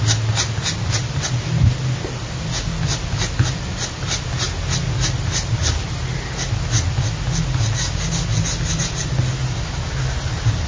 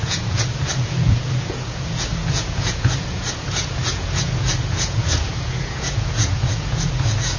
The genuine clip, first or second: first